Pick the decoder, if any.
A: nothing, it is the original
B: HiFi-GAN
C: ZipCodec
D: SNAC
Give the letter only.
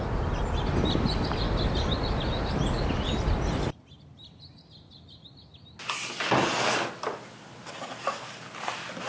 A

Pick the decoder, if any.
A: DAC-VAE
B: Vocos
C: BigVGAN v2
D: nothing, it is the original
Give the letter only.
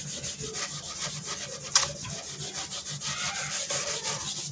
D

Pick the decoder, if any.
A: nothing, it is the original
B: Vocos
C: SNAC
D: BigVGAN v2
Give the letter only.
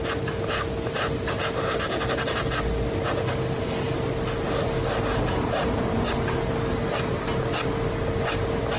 A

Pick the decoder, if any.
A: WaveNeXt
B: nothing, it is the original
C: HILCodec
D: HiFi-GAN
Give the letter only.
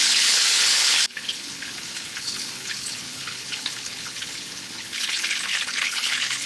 C